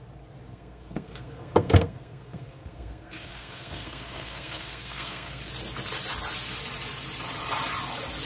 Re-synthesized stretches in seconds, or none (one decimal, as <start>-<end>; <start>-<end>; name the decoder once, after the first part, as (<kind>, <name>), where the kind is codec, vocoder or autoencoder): 0.5-5.5 (codec, SNAC)